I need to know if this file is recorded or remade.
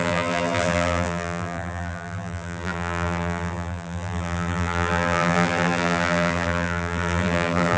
remade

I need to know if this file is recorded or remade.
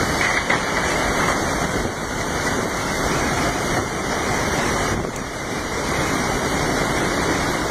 remade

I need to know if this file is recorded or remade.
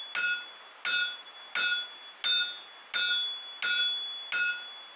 recorded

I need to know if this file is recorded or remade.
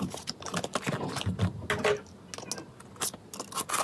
recorded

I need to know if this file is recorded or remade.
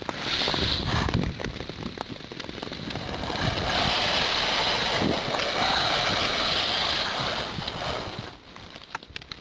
recorded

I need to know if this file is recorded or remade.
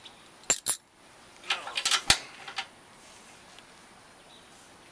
recorded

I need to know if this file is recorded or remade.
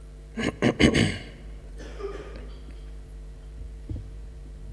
remade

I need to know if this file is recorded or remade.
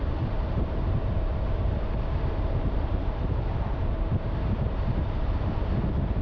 remade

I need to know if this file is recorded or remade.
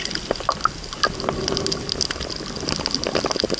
recorded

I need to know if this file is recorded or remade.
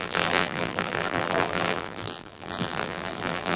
remade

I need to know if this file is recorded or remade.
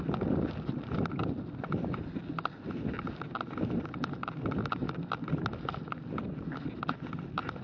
recorded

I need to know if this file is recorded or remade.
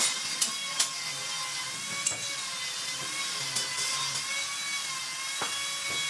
recorded